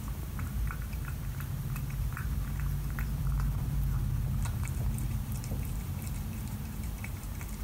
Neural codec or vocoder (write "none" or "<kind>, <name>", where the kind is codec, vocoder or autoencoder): vocoder, BigVGAN v2